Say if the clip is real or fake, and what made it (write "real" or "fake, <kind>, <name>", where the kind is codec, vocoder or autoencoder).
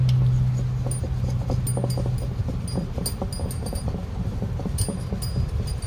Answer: real